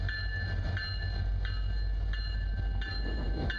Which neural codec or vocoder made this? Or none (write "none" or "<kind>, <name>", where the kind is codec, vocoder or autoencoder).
none